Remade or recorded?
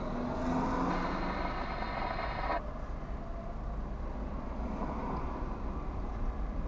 recorded